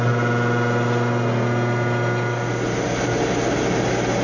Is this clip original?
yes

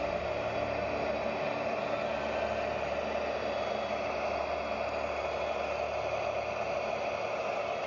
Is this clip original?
yes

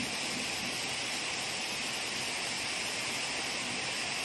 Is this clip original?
yes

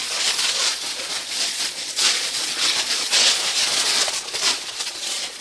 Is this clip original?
no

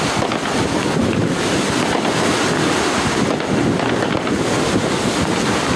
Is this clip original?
yes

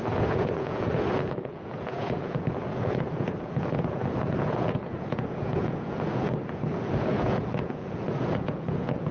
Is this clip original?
no